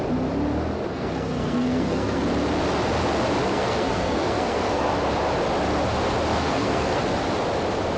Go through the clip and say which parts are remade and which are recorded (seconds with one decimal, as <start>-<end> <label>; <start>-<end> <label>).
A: 0.0-0.9 recorded; 0.9-2.2 remade; 2.2-3.4 recorded; 3.4-4.9 remade; 4.9-6.3 recorded; 6.3-7.0 remade; 7.0-8.0 recorded